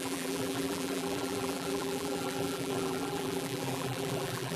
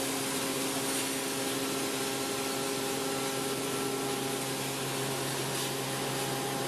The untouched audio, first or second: second